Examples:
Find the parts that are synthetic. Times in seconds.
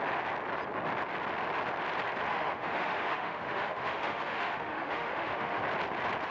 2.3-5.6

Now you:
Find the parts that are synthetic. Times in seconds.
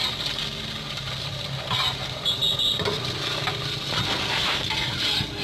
none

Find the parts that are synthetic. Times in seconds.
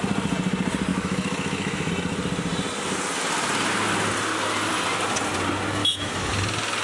0.9-1.9; 5.8-6.3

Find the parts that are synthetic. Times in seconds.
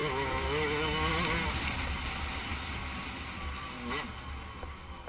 0.0-1.1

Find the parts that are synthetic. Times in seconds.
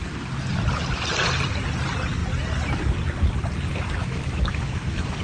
4.0-5.2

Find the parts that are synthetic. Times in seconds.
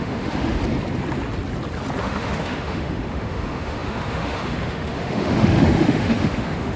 0.0-0.6; 2.0-6.8